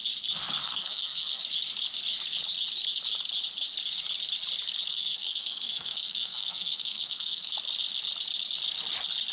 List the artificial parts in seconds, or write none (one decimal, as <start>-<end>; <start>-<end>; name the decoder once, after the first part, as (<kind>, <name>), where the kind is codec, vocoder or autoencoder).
0.6-1.4 (codec, SNAC); 4.9-7.5